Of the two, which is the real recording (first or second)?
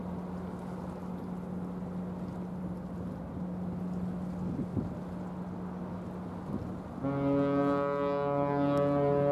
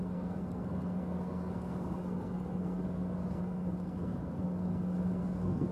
first